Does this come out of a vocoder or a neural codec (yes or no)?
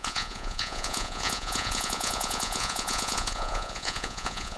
yes